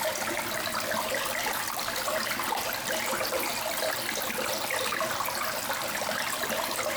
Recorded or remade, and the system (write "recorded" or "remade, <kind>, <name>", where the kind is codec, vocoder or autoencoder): recorded